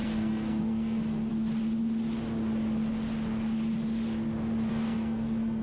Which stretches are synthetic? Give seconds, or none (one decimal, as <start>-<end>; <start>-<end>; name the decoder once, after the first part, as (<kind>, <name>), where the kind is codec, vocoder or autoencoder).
0.0-1.3 (codec, SNAC); 4.7-5.6